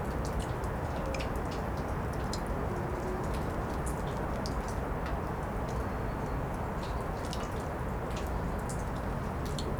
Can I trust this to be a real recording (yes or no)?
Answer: yes